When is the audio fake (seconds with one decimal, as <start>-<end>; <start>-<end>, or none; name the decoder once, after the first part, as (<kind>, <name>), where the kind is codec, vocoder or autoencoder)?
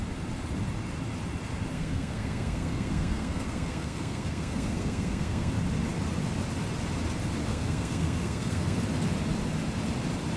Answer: 1.7-5.5 (codec, SNAC); 7.5-8.8